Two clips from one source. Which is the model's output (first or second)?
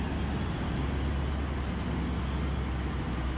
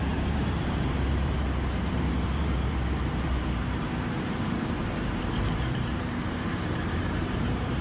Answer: second